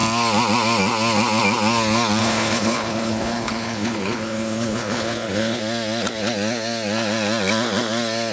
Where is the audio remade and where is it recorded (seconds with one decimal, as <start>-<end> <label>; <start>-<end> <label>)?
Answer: 0.0-2.2 recorded; 2.2-5.6 remade; 5.6-8.3 recorded